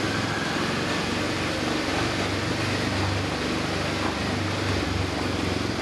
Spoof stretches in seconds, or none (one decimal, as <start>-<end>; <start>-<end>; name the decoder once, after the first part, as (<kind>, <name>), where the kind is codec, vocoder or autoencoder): none